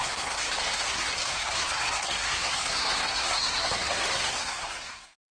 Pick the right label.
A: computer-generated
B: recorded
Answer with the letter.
A